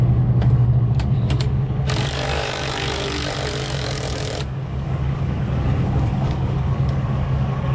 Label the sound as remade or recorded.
remade